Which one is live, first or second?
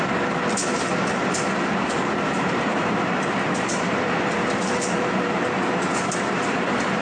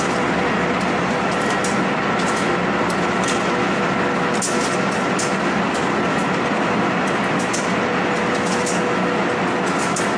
second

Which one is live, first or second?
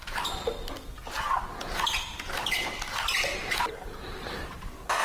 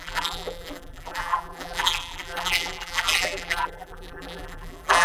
first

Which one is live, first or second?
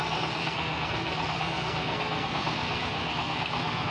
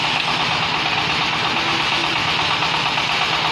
second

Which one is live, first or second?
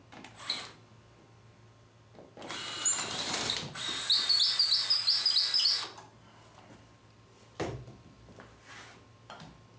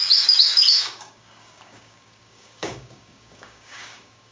first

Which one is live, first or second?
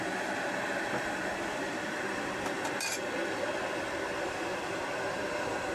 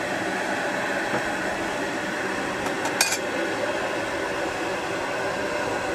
second